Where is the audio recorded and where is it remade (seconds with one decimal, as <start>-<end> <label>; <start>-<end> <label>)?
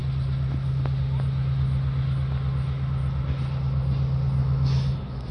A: 0.0-4.4 recorded; 4.4-5.3 remade